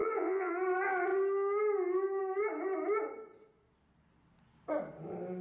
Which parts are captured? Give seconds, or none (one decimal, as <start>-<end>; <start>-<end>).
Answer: 0.5-5.4